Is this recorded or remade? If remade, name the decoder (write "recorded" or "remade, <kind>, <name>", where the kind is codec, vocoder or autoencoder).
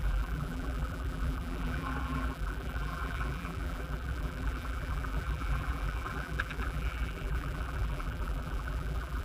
remade, vocoder, BigVGAN v2